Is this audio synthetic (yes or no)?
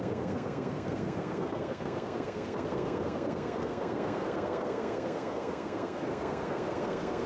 yes